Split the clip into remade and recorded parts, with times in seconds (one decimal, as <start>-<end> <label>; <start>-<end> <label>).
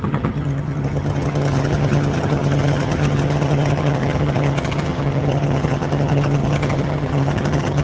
0.0-7.8 remade